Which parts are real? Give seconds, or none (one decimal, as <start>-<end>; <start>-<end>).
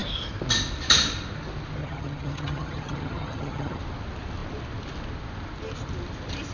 0.0-1.8; 3.8-6.5